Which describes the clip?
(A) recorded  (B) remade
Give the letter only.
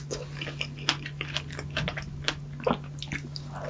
A